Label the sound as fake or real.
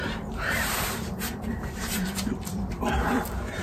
fake